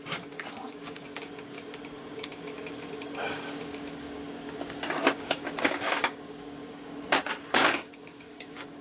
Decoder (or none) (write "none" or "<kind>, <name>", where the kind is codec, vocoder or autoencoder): codec, DAC